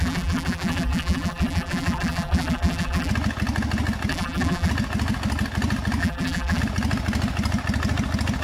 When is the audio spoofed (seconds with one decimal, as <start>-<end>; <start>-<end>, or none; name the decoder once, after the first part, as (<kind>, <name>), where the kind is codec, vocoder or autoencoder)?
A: 0.0-3.1 (vocoder, BigVGAN v2); 4.1-4.7; 6.0-6.6